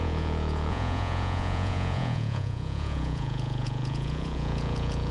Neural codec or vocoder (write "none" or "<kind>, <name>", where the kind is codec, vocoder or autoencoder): vocoder, Vocos